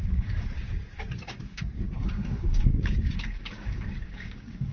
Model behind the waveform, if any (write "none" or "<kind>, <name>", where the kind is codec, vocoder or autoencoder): codec, DAC